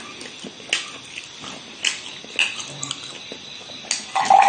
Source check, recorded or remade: recorded